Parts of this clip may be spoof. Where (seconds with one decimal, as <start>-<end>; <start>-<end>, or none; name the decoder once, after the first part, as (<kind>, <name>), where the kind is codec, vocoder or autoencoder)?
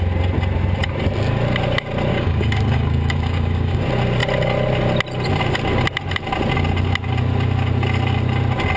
2.1-3.8 (codec, DAC)